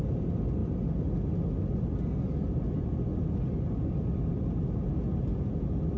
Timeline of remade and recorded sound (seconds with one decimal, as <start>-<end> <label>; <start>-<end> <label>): 0.0-6.0 recorded